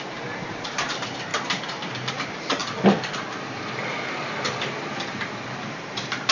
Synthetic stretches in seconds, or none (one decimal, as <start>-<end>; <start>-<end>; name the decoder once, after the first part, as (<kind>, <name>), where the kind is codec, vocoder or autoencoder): 0.0-1.3 (vocoder, BigVGAN v2); 2.1-2.6; 5.1-6.3